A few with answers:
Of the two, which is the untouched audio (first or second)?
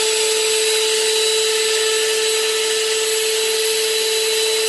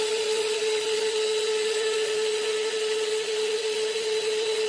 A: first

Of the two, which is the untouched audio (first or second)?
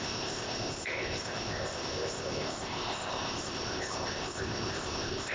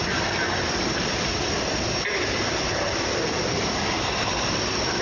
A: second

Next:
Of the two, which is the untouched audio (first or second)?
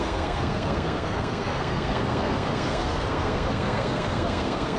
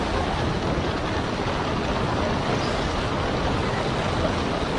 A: second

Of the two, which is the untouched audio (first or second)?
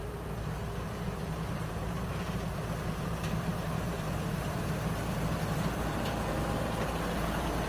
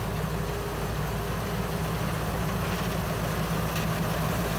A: second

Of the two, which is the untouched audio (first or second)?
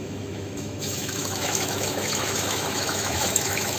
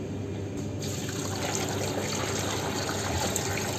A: second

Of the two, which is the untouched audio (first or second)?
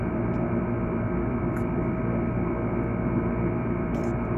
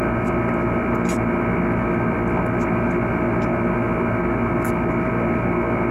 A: second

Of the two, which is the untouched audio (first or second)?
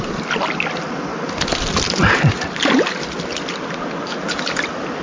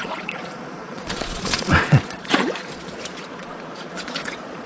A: first